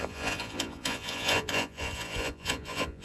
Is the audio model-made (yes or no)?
yes